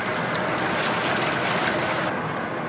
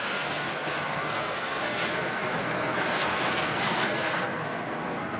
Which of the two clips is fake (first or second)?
second